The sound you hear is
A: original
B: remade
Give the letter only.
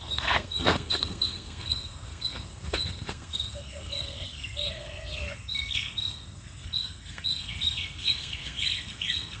B